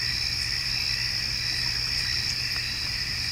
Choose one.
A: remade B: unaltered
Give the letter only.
B